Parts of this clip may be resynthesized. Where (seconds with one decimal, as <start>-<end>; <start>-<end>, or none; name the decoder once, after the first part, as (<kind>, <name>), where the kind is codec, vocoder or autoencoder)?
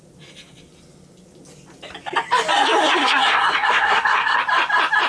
2.8-4.4 (codec, SNAC)